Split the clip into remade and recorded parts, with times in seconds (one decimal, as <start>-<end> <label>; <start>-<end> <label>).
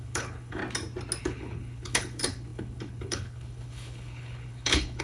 0.0-0.6 remade; 0.6-1.2 recorded; 1.2-5.0 remade